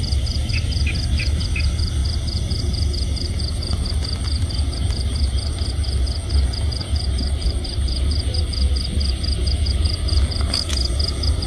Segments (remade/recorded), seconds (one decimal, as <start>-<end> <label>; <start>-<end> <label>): 0.0-6.8 recorded; 6.8-8.4 remade; 8.4-11.5 recorded